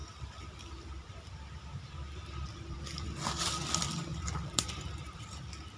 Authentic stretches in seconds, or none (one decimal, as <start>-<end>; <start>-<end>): 3.5-4.1